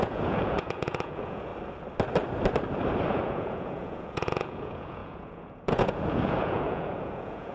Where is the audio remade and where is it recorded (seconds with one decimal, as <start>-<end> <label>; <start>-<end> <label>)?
0.0-1.5 remade; 1.5-3.1 recorded; 3.1-7.5 remade